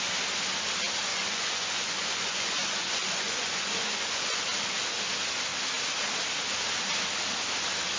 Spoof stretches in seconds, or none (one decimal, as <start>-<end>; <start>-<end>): 1.1-4.4